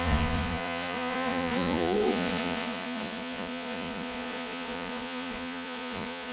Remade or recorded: remade